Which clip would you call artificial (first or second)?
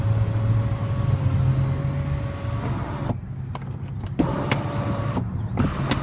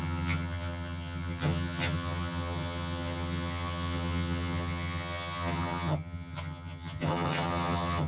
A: second